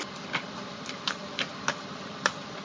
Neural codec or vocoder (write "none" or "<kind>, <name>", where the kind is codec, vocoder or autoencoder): vocoder, BigVGAN v2